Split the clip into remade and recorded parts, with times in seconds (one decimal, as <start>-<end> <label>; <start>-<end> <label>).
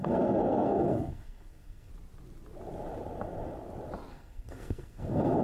0.0-1.9 remade; 1.9-4.1 recorded; 4.1-5.4 remade